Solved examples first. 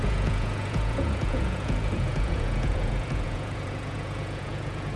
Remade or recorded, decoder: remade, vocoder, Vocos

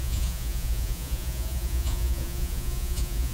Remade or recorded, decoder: remade, vocoder, Vocos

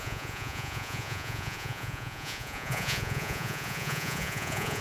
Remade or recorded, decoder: remade, vocoder, Vocos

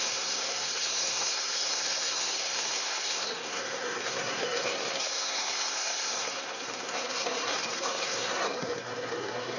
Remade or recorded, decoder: remade, codec, SNAC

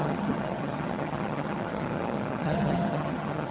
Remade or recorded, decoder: remade, vocoder, HiFi-GAN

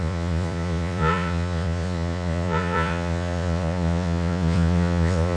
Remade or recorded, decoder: remade, vocoder, Vocos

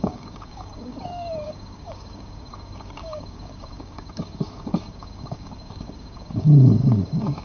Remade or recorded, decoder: remade, codec, DAC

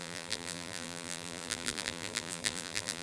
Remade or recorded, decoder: remade, vocoder, BigVGAN v2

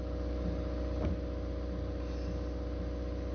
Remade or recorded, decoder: recorded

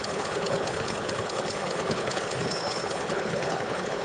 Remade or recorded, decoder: remade, codec, HILCodec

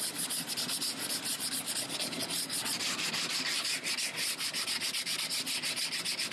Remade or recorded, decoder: recorded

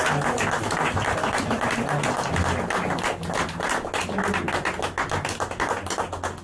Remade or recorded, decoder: recorded